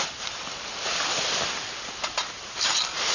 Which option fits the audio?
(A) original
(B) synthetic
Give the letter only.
B